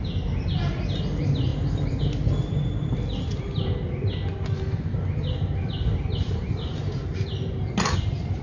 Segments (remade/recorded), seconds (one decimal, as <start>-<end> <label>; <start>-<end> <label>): 0.0-1.5 recorded; 1.5-2.0 remade; 2.0-8.4 recorded